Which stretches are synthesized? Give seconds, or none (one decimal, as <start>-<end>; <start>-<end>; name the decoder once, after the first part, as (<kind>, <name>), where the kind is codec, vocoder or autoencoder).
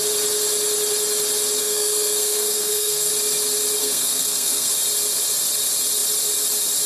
1.6-3.1 (codec, SNAC); 3.8-4.7